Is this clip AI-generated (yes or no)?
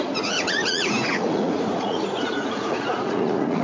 yes